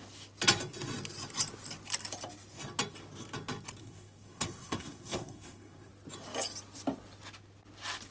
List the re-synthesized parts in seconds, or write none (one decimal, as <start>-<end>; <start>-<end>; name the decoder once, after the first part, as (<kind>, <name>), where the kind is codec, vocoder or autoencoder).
3.8-5.9 (codec, SNAC)